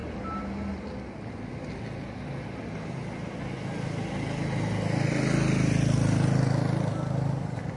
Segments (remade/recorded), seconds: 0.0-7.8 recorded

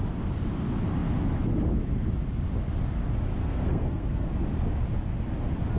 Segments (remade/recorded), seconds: 0.0-3.4 recorded; 3.4-4.3 remade; 4.3-5.8 recorded

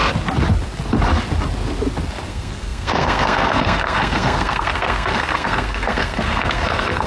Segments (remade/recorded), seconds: 0.0-2.3 recorded; 2.3-7.1 remade

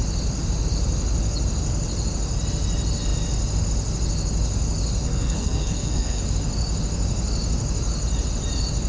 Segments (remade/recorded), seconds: 0.0-5.0 recorded; 5.0-6.2 remade; 6.2-8.9 recorded

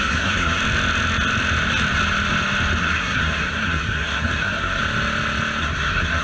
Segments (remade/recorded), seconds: 0.0-0.6 remade; 0.6-2.8 recorded; 2.8-4.8 remade; 4.8-5.6 recorded; 5.6-6.2 remade

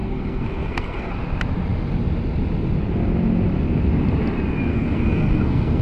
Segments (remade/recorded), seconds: 0.0-1.1 remade; 1.1-4.7 recorded; 4.7-5.8 remade